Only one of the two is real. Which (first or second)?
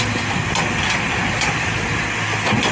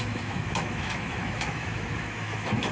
first